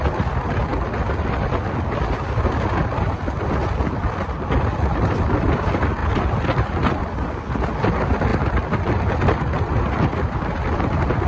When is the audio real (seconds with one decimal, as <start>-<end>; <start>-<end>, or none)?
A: 0.0-11.3